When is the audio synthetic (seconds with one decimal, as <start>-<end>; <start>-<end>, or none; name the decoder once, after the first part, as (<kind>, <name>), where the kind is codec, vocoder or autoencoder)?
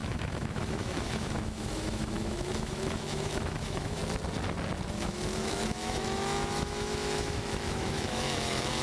0.0-4.0 (autoencoder, DAC-VAE); 4.9-8.8